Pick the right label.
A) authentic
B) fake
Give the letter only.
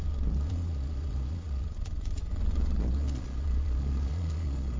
B